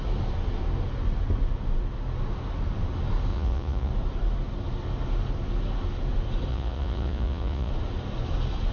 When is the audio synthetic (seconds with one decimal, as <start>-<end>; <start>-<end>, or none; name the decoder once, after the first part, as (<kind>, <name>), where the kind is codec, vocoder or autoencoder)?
3.3-3.9 (vocoder, Vocos); 6.5-7.7